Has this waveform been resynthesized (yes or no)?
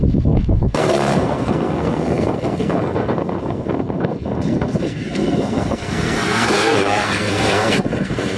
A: yes